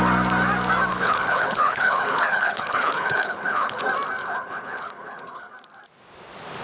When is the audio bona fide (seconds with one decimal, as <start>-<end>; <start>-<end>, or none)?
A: 0.0-0.9; 3.8-4.2; 5.5-6.6